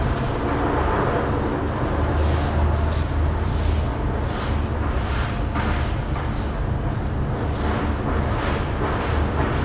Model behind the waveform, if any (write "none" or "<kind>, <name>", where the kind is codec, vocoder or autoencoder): none